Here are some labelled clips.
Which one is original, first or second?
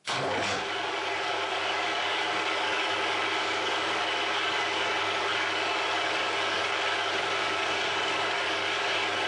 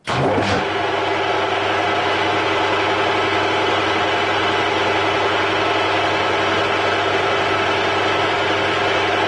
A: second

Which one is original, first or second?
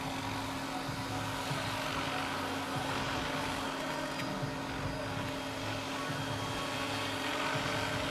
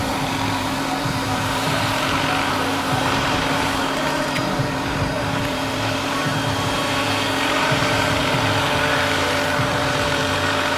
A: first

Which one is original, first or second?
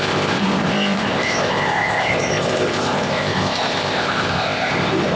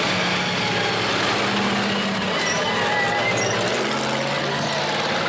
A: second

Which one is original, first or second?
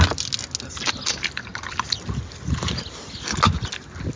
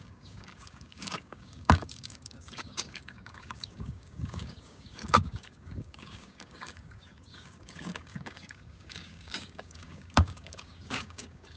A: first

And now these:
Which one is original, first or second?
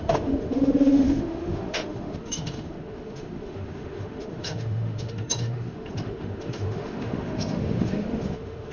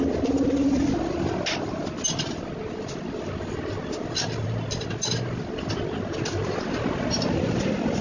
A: second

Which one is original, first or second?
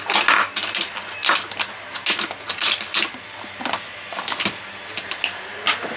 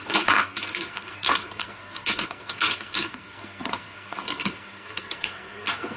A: first